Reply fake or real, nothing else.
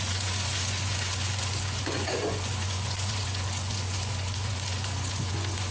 fake